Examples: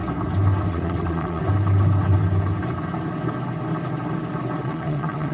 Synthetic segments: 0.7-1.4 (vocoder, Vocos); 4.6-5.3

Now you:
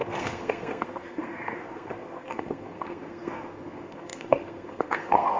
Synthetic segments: 0.0-5.4 (codec, SNAC)